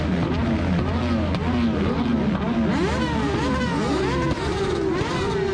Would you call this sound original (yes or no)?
yes